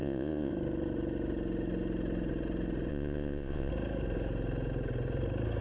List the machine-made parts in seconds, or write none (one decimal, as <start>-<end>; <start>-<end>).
0.0-0.5; 2.9-3.7

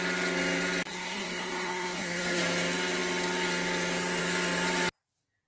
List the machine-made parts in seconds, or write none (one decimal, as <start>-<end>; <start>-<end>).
0.9-2.4

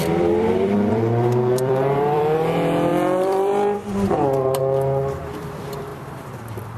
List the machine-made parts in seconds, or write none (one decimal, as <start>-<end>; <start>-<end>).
0.0-6.8

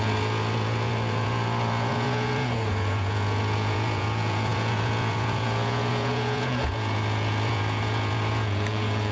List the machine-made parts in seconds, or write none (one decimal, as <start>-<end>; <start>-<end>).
0.0-9.1

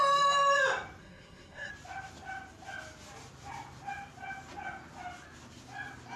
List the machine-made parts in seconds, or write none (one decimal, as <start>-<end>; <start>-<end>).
1.0-1.7

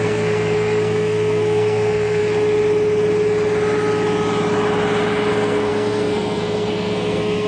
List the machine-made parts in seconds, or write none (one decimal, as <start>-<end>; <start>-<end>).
0.0-2.2; 5.3-7.5